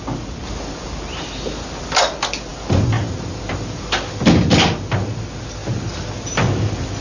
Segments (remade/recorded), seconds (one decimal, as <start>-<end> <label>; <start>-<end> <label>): 0.0-7.0 recorded